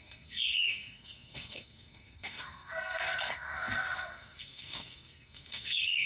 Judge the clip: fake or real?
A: fake